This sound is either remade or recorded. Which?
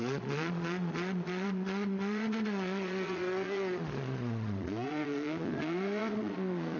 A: remade